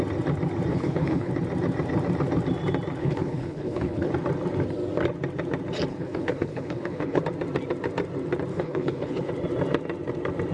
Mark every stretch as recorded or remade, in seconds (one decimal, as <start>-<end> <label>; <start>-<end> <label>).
0.0-0.7 recorded; 0.7-1.3 remade; 1.3-3.0 recorded; 3.0-4.1 remade; 4.1-5.9 recorded; 5.9-7.2 remade; 7.2-8.5 recorded; 8.5-9.3 remade; 9.3-10.5 recorded